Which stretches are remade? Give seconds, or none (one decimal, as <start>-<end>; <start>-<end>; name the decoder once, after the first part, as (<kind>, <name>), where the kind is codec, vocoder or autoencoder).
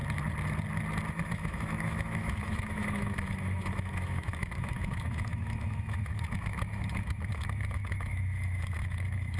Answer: 1.1-9.4 (autoencoder, DAC-VAE)